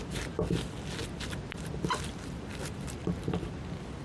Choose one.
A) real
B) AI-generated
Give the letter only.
B